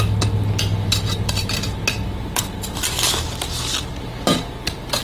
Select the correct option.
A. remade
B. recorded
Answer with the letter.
B